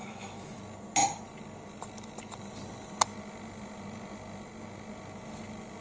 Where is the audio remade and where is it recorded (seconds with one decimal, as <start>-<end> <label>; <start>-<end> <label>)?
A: 0.0-0.6 remade; 0.6-5.8 recorded